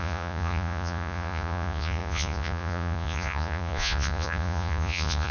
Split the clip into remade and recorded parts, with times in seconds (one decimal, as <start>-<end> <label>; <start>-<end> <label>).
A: 0.0-5.3 remade